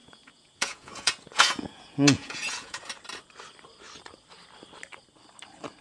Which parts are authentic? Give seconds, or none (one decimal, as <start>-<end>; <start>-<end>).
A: 2.8-5.8